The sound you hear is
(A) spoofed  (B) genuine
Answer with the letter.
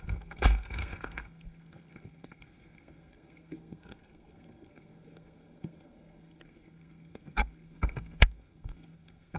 A